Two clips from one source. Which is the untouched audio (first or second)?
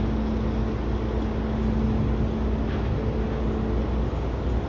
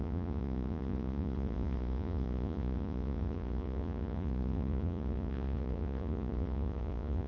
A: first